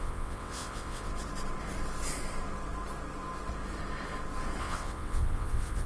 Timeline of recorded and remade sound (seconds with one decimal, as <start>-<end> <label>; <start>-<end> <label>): 0.0-1.1 remade; 1.1-4.6 recorded; 4.6-5.9 remade